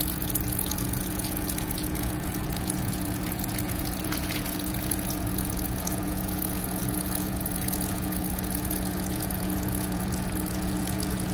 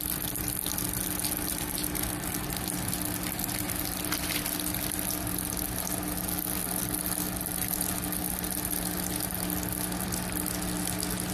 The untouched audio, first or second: second